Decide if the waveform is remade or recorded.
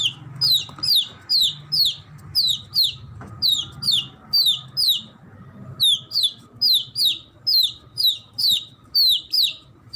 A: recorded